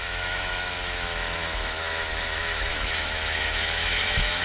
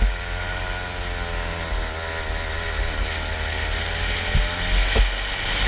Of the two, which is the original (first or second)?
second